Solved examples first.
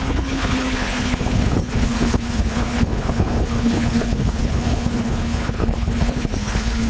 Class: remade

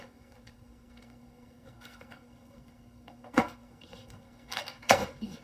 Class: remade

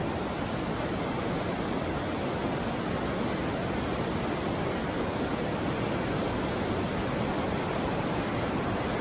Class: recorded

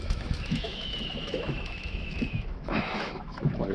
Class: remade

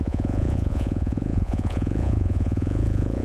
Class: remade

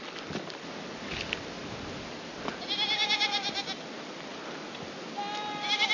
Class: recorded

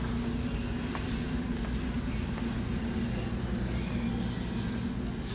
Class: recorded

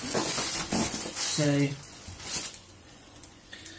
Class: remade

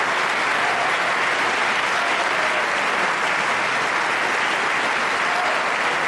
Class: recorded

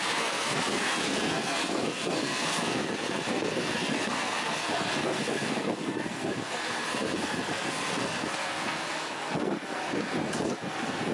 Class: remade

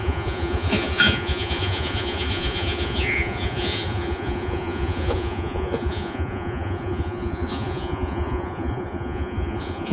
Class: remade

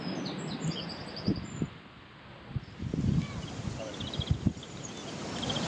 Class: recorded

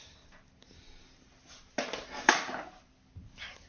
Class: recorded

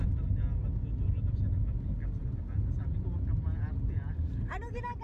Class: recorded